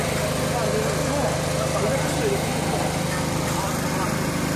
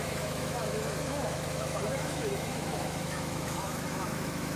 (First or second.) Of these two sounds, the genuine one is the first